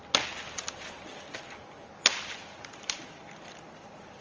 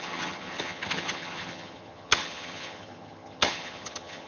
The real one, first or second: first